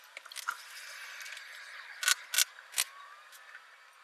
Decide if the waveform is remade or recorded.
recorded